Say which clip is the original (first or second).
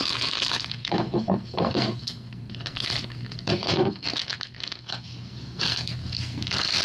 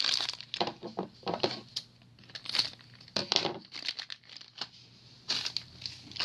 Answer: second